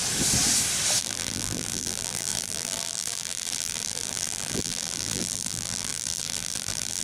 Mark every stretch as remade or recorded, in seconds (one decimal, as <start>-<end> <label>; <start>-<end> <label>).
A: 0.0-1.0 recorded; 1.0-7.0 remade